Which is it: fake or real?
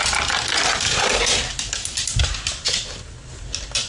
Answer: real